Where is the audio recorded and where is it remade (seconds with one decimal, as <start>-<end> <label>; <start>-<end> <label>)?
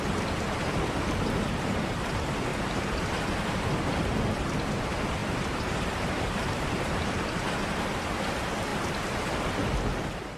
0.0-2.5 recorded; 2.5-3.0 remade; 3.0-5.2 recorded; 5.2-7.5 remade; 7.5-10.4 recorded